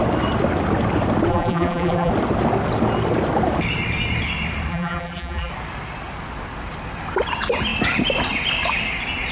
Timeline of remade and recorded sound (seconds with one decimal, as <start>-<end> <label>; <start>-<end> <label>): 0.0-1.3 recorded; 1.3-2.1 remade; 2.1-4.7 recorded; 4.7-5.5 remade; 5.5-9.3 recorded